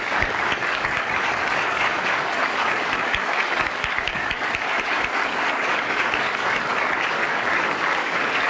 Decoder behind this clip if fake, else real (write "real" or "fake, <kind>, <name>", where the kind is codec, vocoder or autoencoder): fake, codec, DAC